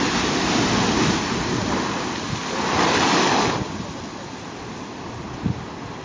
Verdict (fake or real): real